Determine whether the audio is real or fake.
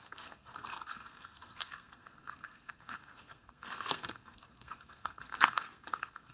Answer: fake